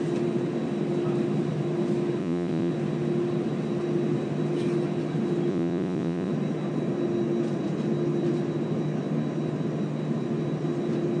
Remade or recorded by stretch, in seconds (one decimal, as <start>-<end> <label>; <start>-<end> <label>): 0.0-2.2 recorded; 2.2-2.7 remade; 2.7-5.5 recorded; 5.5-6.3 remade; 6.3-11.2 recorded